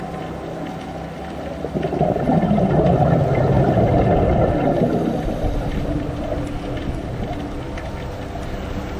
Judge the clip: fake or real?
real